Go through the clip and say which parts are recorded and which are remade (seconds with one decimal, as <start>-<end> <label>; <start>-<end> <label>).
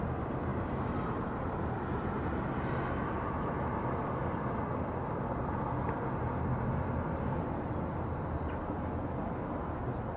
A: 0.0-0.5 recorded; 0.5-4.0 remade; 4.0-10.2 recorded